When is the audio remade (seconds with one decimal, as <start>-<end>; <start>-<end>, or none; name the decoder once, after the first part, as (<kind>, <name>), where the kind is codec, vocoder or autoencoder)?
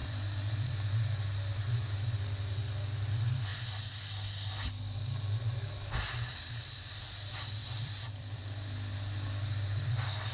0.0-0.7 (vocoder, BigVGAN v2); 7.6-8.4